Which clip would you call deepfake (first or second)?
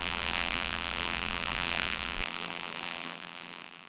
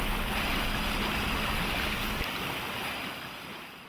first